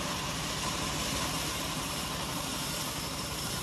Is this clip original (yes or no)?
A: no